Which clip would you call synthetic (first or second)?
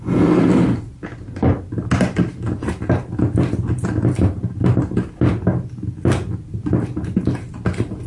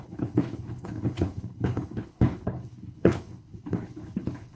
second